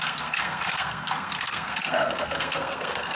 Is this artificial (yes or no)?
yes